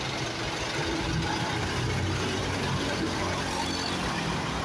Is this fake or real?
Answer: real